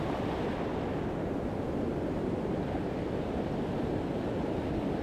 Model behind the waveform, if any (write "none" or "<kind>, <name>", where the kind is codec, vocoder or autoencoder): none